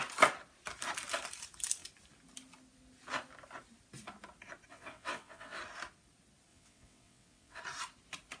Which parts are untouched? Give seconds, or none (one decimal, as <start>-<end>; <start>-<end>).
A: 0.0-4.7; 5.6-6.5; 7.6-8.4